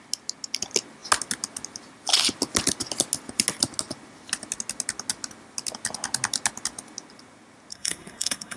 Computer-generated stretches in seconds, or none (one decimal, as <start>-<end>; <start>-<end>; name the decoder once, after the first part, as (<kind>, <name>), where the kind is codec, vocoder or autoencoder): 7.7-8.6 (codec, SNAC)